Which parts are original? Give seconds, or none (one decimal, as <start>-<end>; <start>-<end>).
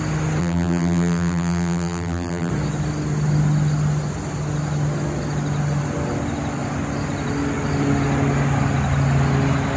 0.0-0.4; 2.5-9.8